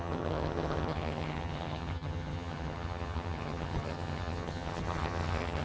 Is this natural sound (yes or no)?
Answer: no